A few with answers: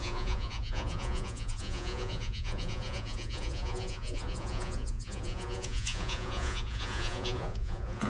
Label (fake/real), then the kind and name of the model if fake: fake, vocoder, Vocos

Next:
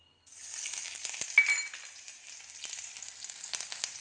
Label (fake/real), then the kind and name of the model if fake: real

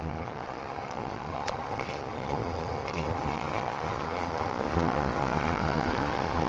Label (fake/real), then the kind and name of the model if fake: fake, vocoder, Vocos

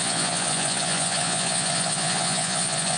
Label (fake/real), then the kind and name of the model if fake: fake, vocoder, Vocos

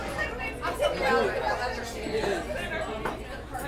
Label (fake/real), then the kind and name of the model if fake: real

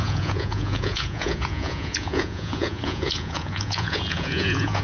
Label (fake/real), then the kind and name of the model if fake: fake, vocoder, Vocos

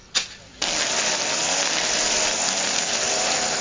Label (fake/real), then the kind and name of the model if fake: real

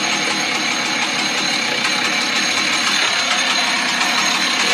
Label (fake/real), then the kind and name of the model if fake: real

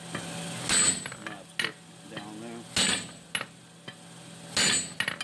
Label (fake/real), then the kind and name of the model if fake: real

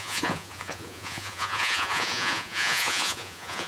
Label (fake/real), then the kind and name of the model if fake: fake, vocoder, Vocos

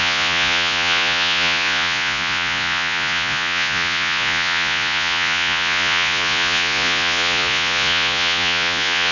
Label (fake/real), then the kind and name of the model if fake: fake, vocoder, Vocos